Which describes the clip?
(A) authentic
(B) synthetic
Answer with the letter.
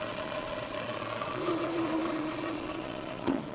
B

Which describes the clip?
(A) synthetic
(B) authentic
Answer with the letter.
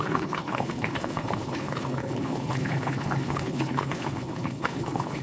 A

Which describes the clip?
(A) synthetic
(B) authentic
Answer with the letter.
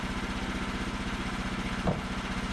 B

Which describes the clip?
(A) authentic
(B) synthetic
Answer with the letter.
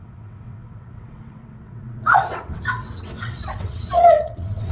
B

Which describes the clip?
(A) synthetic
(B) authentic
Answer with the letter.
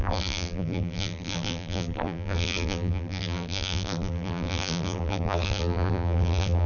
A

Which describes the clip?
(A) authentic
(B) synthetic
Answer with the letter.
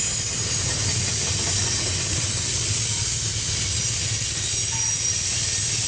A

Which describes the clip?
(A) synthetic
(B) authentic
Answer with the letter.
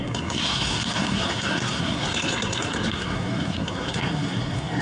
A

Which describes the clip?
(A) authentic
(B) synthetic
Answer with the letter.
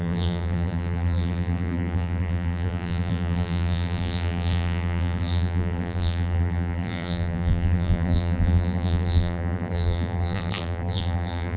B